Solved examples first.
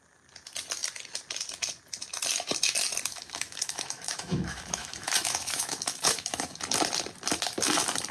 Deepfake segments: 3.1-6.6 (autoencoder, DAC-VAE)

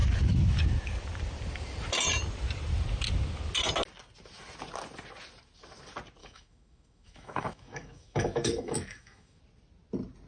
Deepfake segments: 6.2-9.4 (autoencoder, DAC-VAE)

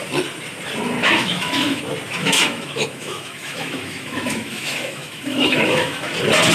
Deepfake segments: 1.0-1.8 (autoencoder, DAC-VAE); 2.2-6.1

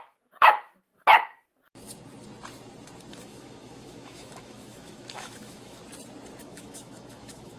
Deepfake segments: 0.0-0.9 (autoencoder, DAC-VAE); 3.1-5.8; 6.4-7.6

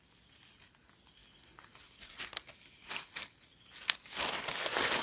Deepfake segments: none